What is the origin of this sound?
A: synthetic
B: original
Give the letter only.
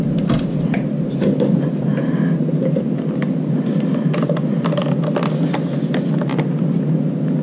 B